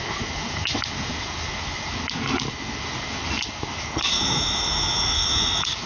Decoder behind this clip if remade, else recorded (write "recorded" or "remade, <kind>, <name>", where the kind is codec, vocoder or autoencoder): recorded